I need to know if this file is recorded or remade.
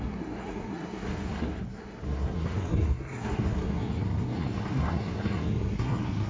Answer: remade